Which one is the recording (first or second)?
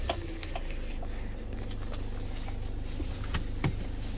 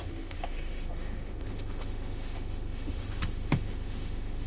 first